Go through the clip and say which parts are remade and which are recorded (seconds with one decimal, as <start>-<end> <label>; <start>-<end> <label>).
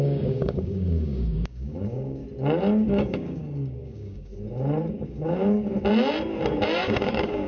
0.0-2.2 remade; 2.2-2.9 recorded; 2.9-4.3 remade; 4.3-4.9 recorded; 4.9-5.4 remade; 5.4-6.8 recorded; 6.8-7.5 remade